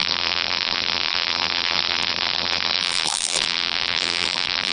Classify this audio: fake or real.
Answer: fake